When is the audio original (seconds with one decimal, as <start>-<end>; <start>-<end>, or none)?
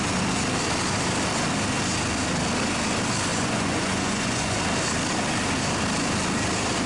0.0-3.3; 4.6-6.9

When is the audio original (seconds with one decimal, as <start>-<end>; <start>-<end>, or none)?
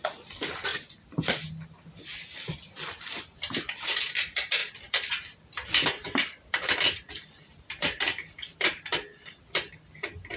0.0-0.7; 1.2-4.6; 8.0-10.4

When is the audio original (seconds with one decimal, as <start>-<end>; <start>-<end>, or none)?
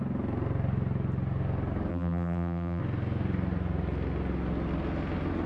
0.0-1.9; 2.8-5.5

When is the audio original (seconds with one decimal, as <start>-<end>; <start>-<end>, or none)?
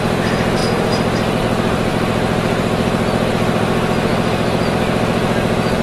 0.0-4.1; 4.6-5.8